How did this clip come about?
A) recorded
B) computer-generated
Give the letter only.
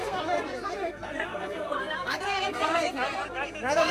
B